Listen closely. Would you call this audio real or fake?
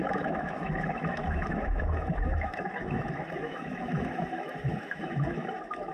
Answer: fake